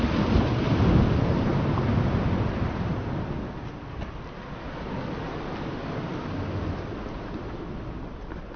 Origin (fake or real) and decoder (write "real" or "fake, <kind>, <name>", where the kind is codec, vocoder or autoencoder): real